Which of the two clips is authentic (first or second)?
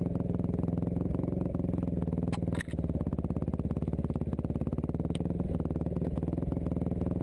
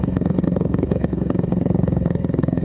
first